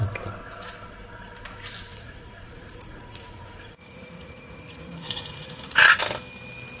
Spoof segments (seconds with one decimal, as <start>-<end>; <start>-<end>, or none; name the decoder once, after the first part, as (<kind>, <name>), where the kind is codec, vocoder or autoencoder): 1.9-6.0 (vocoder, Vocos)